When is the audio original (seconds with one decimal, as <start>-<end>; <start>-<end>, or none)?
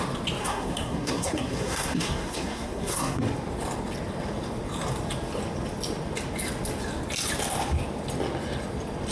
0.0-0.4; 3.2-9.1